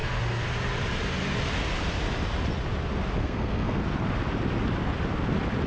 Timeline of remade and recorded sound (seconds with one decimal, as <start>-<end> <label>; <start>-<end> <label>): 0.0-3.2 recorded; 3.2-3.8 remade; 3.8-5.7 recorded